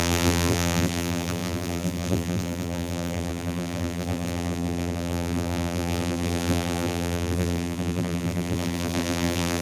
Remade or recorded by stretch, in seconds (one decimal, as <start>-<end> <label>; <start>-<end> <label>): 0.0-9.6 remade